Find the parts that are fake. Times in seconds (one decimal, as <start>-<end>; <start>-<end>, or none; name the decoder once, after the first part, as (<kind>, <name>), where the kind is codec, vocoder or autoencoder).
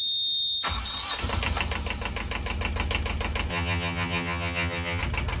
3.5-5.0 (vocoder, HiFi-GAN)